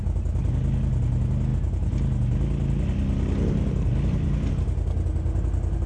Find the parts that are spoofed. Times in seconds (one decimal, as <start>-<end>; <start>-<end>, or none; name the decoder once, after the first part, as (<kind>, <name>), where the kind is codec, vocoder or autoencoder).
none